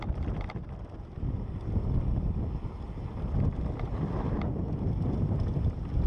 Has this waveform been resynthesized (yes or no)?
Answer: no